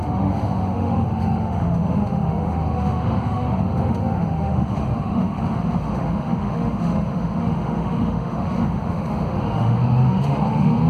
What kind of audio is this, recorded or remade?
remade